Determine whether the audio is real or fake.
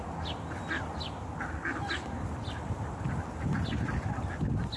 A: real